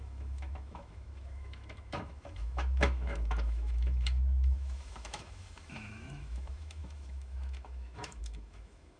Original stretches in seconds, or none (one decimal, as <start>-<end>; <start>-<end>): none